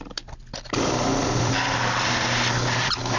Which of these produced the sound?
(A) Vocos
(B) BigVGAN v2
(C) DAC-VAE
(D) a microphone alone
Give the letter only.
B